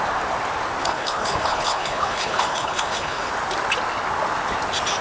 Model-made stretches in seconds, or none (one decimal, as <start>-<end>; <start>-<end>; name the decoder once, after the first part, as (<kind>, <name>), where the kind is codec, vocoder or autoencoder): 0.8-3.3 (codec, HILCodec)